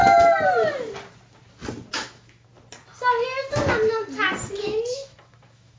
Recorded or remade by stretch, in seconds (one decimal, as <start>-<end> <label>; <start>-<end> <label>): 0.0-1.9 recorded; 1.9-2.5 remade; 2.5-4.5 recorded; 4.5-5.8 remade